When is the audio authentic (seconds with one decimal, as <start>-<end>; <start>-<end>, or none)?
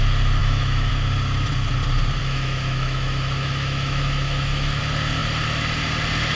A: 0.0-0.4; 0.9-2.2; 4.8-6.3